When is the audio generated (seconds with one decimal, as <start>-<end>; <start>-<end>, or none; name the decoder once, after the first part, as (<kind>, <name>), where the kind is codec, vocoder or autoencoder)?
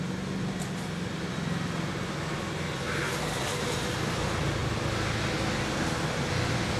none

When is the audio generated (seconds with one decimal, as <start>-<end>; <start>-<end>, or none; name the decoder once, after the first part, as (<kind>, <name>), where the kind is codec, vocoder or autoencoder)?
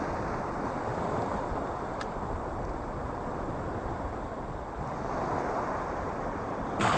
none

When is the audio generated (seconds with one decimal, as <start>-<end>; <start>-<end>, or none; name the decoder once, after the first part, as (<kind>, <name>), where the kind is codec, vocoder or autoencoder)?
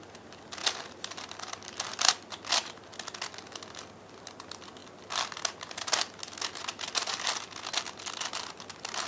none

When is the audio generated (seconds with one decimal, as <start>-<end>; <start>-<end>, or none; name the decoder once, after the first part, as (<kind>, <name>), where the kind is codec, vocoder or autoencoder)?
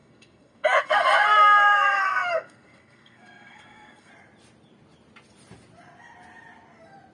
0.0-4.1 (codec, SNAC)